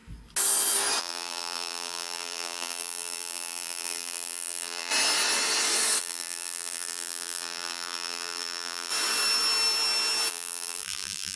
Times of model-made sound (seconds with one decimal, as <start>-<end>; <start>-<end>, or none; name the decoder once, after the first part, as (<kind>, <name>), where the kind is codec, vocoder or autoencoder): 1.0-4.9 (vocoder, BigVGAN v2); 6.0-8.9; 10.3-11.4